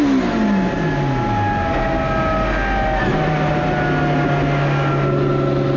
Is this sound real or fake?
real